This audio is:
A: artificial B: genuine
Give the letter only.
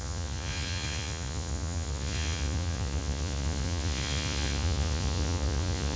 A